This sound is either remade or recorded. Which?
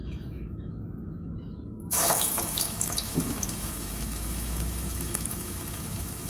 remade